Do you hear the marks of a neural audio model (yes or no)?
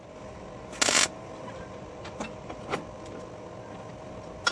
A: no